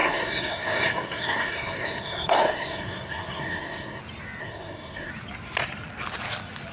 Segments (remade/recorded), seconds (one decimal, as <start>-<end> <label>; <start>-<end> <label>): 0.0-4.0 remade; 4.0-4.4 recorded; 4.4-5.1 remade; 5.1-6.7 recorded